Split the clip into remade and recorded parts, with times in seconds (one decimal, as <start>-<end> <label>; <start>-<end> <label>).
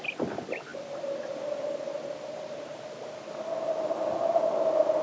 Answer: 0.0-5.0 recorded